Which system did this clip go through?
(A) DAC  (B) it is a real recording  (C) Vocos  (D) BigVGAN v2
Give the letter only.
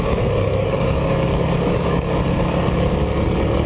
A